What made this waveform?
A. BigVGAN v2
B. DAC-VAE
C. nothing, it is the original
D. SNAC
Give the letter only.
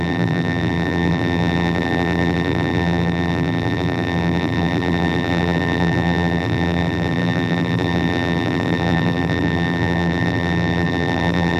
A